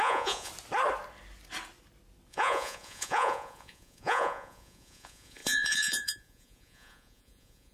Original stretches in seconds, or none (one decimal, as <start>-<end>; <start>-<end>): 0.5-2.3